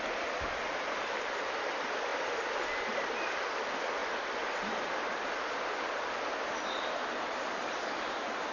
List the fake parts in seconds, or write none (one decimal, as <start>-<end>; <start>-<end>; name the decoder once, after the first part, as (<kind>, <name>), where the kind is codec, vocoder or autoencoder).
none